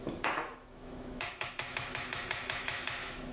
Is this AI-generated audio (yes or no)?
yes